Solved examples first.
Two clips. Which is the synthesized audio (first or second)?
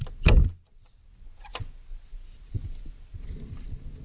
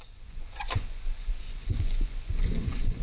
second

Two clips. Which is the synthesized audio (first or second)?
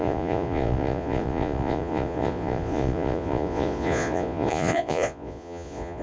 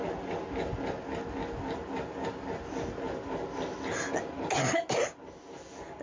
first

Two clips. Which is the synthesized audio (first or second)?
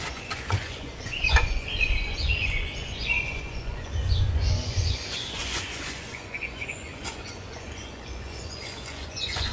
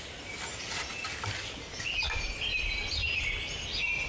first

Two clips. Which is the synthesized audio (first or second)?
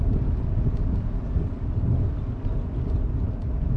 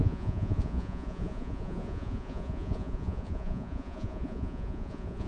second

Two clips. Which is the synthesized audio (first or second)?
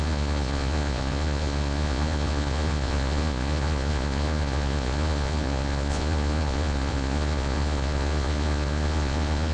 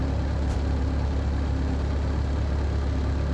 first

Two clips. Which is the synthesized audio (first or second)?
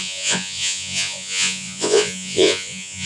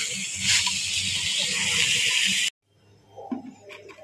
first